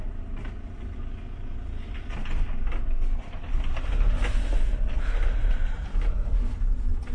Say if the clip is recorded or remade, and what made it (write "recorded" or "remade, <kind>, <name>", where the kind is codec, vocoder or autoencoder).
recorded